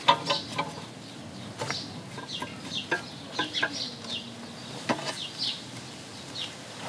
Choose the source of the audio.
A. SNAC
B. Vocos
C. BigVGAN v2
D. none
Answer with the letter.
D